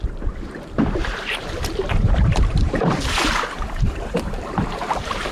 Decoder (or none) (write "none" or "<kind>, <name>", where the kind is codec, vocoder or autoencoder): vocoder, BigVGAN v2